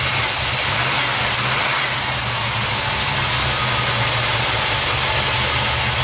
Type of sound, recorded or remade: recorded